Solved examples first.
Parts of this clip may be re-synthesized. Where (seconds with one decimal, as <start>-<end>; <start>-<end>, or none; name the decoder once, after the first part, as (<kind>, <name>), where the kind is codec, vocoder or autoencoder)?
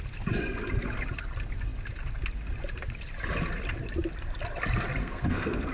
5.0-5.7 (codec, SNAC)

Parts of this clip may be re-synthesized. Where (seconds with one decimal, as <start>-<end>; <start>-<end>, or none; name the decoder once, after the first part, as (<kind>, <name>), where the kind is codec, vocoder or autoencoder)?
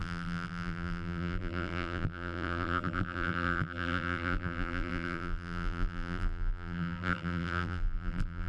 0.0-8.5 (vocoder, BigVGAN v2)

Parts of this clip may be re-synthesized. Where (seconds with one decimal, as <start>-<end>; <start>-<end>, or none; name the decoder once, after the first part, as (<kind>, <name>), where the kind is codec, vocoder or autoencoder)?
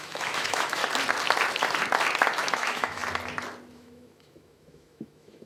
0.0-0.8 (autoencoder, DAC-VAE); 2.4-3.0; 3.7-5.5